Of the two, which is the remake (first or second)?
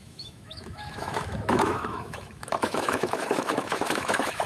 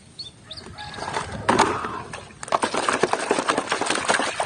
first